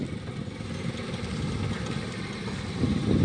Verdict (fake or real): real